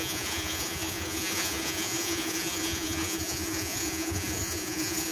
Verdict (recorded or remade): remade